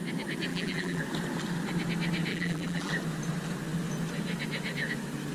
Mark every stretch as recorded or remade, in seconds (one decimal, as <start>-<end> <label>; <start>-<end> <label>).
0.0-0.5 recorded; 0.5-1.0 remade; 1.0-2.3 recorded; 2.3-2.9 remade; 2.9-5.3 recorded